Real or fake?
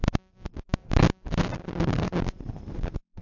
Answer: real